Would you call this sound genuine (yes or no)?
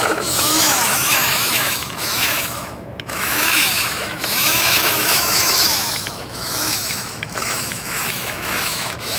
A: no